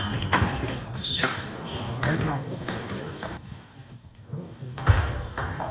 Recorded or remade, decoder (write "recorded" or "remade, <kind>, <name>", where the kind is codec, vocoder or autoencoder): remade, codec, DAC